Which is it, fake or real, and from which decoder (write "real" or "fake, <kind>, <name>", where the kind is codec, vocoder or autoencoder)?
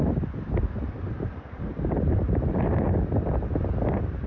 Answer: fake, vocoder, BigVGAN v2